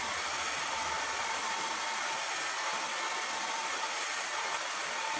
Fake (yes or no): no